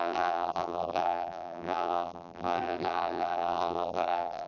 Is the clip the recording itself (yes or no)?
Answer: no